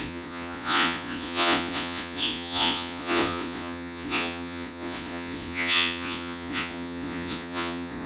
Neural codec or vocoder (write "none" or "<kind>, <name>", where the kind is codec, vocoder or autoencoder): vocoder, Vocos